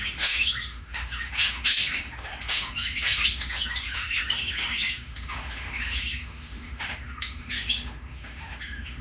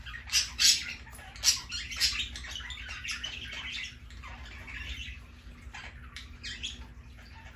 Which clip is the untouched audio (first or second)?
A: second